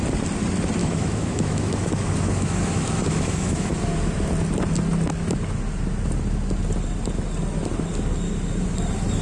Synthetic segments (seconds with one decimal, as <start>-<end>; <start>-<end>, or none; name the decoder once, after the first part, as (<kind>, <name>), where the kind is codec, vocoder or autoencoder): 0.8-3.7 (autoencoder, DAC-VAE)